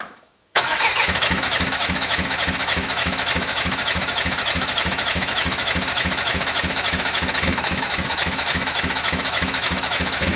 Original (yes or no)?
no